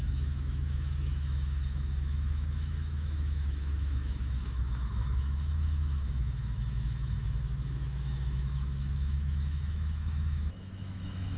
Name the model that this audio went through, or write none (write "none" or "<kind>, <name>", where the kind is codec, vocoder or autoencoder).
autoencoder, DAC-VAE